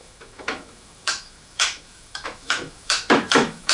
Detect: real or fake fake